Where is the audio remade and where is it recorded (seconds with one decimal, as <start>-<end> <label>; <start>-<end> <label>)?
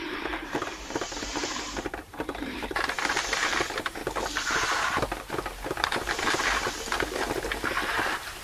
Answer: 0.0-4.0 remade; 4.0-4.5 recorded; 4.5-8.4 remade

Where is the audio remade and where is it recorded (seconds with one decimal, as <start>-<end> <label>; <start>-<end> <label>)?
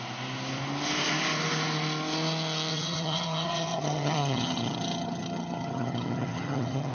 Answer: 0.0-2.7 recorded; 2.7-6.9 remade